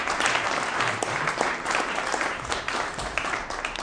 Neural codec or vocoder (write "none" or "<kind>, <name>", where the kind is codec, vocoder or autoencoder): vocoder, BigVGAN v2